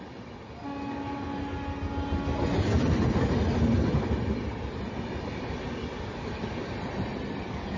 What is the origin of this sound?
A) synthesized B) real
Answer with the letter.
B